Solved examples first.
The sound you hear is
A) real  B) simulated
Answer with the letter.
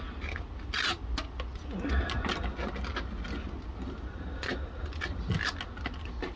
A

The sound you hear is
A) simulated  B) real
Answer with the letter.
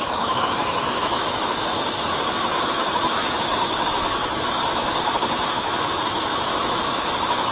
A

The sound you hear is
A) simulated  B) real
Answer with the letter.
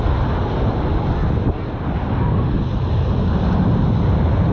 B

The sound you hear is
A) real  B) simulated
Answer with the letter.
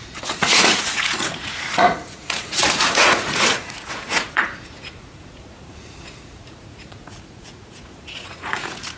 B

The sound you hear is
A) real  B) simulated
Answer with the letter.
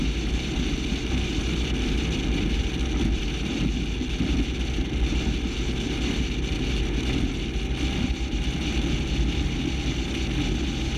A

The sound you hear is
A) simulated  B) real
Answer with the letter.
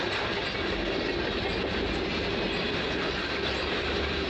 B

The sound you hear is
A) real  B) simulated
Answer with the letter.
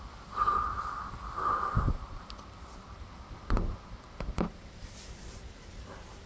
A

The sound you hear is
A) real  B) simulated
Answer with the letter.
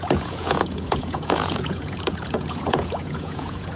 B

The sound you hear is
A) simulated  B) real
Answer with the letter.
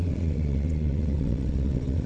A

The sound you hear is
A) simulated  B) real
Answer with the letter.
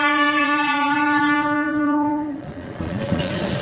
A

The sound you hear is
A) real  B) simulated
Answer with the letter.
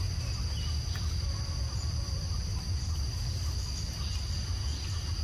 A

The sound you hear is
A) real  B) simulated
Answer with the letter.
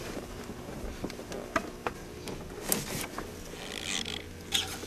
A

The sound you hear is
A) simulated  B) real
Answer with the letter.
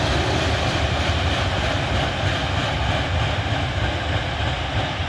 B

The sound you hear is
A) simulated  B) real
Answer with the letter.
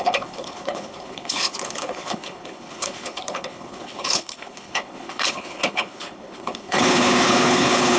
A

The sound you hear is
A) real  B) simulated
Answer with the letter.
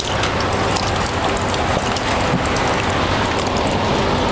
A